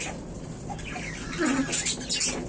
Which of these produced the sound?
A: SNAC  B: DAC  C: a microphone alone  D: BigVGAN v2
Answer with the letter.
C